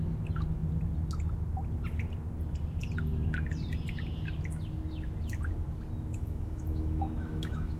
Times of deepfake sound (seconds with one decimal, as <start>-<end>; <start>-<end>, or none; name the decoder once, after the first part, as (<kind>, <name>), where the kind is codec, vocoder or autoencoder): 6.1-7.8 (autoencoder, DAC-VAE)